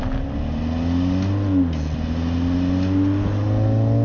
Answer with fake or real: real